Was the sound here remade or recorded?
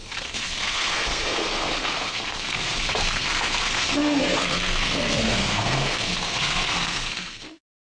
remade